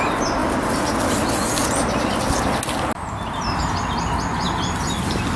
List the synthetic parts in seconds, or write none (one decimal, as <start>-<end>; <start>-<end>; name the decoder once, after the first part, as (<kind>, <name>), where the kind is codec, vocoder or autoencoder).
none